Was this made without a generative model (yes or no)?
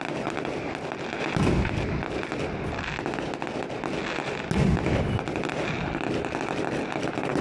yes